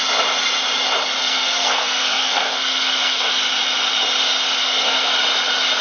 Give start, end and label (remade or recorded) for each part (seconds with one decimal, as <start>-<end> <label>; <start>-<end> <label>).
0.0-1.2 recorded; 1.2-3.3 remade; 3.3-4.6 recorded; 4.6-5.1 remade; 5.1-5.8 recorded